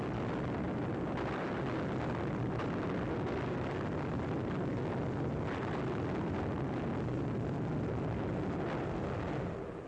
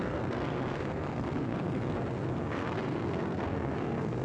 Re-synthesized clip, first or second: second